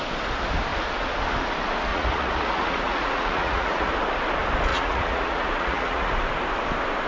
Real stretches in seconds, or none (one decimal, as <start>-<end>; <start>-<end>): 0.0-1.9; 3.9-4.7; 6.1-7.1